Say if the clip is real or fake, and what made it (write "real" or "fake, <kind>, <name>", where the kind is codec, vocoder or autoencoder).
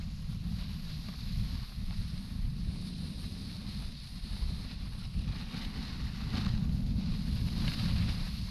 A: real